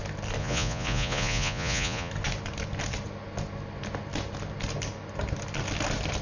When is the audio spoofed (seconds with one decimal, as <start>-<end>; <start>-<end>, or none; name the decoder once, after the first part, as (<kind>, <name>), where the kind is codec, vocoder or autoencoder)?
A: 0.4-2.1 (vocoder, Vocos)